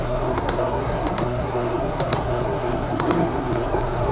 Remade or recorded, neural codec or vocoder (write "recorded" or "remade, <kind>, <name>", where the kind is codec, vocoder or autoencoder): remade, codec, SNAC